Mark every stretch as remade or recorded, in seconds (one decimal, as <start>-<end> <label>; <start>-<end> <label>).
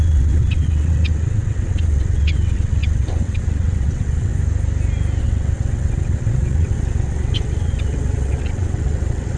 0.0-4.3 remade; 4.3-5.2 recorded; 5.2-9.4 remade